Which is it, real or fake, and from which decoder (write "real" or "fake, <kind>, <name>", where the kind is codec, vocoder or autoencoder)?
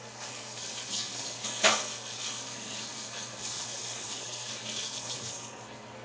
fake, codec, SNAC